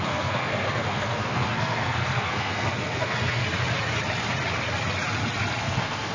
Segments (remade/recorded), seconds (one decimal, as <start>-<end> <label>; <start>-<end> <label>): 0.0-3.4 remade; 3.4-5.6 recorded; 5.6-6.1 remade